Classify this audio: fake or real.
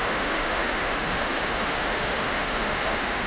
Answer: fake